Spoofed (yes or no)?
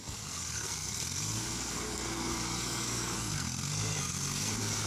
yes